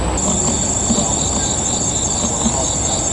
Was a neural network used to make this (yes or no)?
no